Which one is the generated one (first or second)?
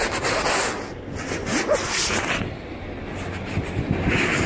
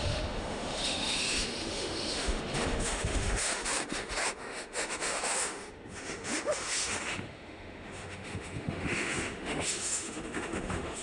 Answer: second